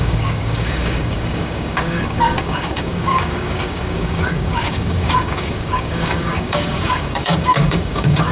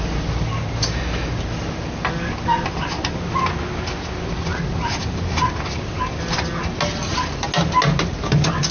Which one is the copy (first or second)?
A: first